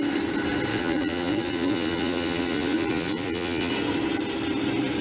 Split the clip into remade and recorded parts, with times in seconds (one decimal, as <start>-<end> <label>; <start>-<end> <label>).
0.0-0.7 recorded; 0.7-3.7 remade; 3.7-5.0 recorded

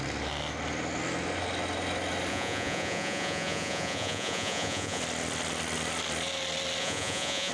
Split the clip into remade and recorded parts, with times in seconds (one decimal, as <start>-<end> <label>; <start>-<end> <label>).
0.0-2.3 recorded; 2.3-5.0 remade; 5.0-6.8 recorded; 6.8-7.5 remade

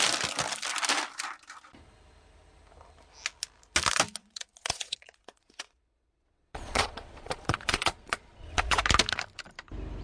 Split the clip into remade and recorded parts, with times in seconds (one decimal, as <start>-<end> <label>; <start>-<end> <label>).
0.0-4.2 recorded; 4.2-8.8 remade; 8.8-10.0 recorded

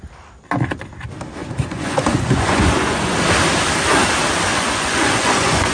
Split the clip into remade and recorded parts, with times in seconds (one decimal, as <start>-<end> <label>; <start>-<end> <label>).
0.0-1.4 recorded; 1.4-3.2 remade; 3.2-4.5 recorded; 4.5-5.7 remade

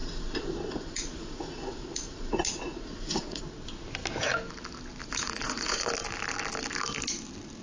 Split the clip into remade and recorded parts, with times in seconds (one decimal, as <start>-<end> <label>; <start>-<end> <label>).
0.0-3.4 remade; 3.4-5.0 recorded; 5.0-5.9 remade; 5.9-7.6 recorded

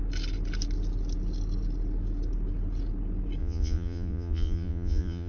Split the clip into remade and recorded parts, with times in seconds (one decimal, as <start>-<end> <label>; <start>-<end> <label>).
0.0-3.4 recorded; 3.4-5.3 remade